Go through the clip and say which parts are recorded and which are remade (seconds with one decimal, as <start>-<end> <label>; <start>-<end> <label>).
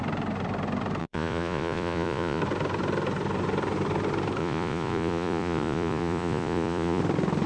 0.0-1.0 recorded; 1.0-2.4 remade; 2.4-4.4 recorded; 4.4-7.0 remade; 7.0-7.5 recorded